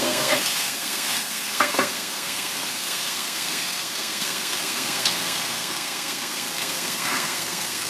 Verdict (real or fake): fake